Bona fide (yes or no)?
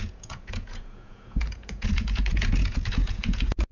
no